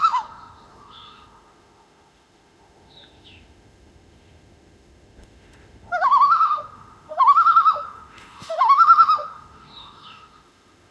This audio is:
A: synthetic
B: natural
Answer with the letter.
A